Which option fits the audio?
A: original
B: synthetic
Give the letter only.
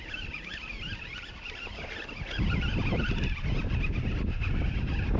A